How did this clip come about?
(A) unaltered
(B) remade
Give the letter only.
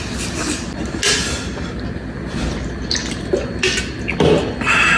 A